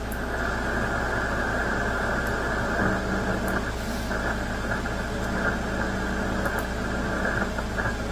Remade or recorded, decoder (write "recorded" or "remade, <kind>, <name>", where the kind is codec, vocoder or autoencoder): recorded